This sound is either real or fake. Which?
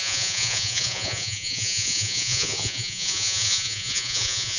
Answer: fake